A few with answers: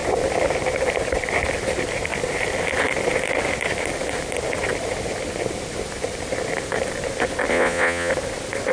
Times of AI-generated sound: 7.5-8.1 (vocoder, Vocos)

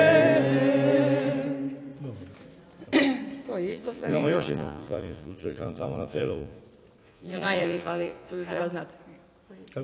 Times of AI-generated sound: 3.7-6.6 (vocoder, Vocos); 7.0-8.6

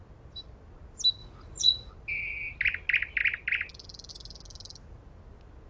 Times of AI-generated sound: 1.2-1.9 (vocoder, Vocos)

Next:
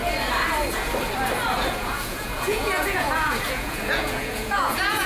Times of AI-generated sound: 1.6-5.1 (vocoder, Vocos)

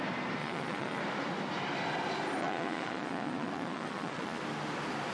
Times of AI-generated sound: 0.4-1.0 (vocoder, Vocos); 2.4-4.4

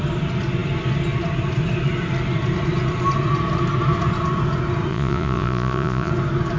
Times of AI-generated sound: 4.9-6.1 (vocoder, Vocos)

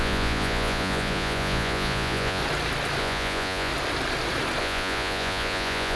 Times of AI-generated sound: 0.0-2.4 (vocoder, Vocos); 3.0-3.7; 4.6-6.0

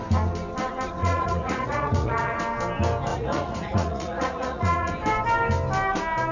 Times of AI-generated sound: 1.0-2.4 (vocoder, Vocos); 3.1-4.9